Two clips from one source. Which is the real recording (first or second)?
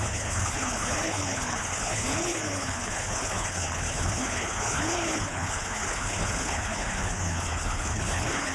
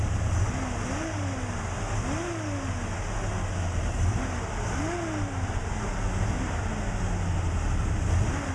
second